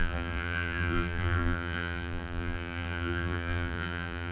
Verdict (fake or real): fake